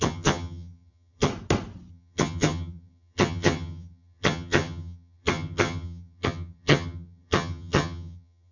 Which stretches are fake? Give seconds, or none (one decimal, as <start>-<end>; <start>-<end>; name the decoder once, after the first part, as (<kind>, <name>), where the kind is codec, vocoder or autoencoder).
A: 0.0-1.3 (vocoder, HiFi-GAN); 1.9-8.5